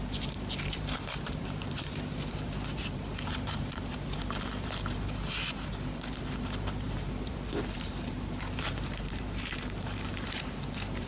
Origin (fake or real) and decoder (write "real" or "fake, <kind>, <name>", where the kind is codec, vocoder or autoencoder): fake, vocoder, BigVGAN v2